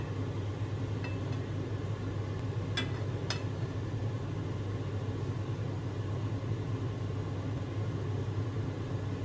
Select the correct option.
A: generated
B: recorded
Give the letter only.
B